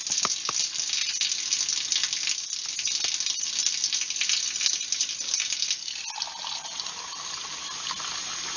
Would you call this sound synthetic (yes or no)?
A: no